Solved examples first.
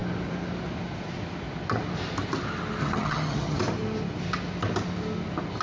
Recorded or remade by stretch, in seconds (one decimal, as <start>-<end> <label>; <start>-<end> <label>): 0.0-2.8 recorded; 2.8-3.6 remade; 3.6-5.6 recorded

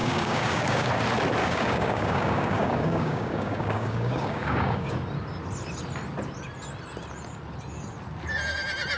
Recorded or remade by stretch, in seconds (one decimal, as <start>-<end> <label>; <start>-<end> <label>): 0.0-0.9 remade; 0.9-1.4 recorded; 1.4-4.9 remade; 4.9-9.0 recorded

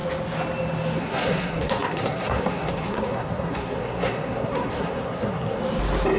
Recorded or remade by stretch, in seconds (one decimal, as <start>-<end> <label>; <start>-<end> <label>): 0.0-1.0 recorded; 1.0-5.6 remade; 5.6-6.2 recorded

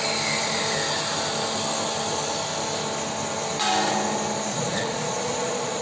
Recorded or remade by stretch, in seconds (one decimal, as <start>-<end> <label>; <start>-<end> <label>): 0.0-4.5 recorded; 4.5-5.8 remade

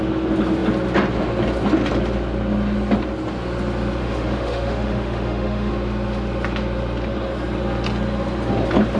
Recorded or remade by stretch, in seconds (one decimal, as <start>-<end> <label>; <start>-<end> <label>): 0.0-4.0 recorded; 4.0-5.7 remade; 5.7-9.0 recorded

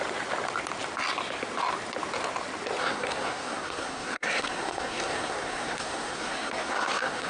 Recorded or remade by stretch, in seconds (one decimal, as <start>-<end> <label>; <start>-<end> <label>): 0.0-2.8 recorded; 2.8-7.3 remade

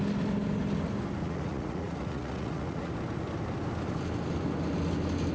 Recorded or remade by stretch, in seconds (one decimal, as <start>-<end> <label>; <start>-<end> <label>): 0.0-1.2 recorded; 1.2-2.9 remade; 2.9-5.3 recorded

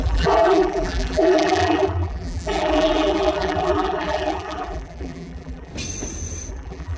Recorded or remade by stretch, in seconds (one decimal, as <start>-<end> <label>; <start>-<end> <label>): 0.0-5.7 remade; 5.7-6.5 recorded; 6.5-7.0 remade